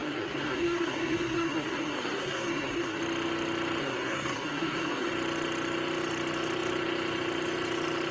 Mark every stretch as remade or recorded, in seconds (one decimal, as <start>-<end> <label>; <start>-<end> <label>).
0.0-3.0 remade; 3.0-3.8 recorded; 3.8-5.1 remade; 5.1-8.1 recorded